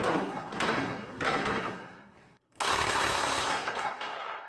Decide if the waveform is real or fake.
fake